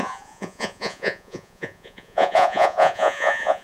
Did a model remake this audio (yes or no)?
yes